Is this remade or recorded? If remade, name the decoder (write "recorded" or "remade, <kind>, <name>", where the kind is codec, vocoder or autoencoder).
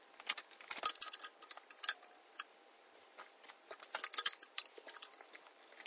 recorded